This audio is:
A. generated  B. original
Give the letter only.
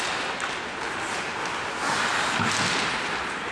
B